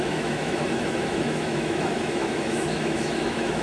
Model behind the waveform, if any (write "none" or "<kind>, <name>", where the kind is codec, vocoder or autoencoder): autoencoder, DAC-VAE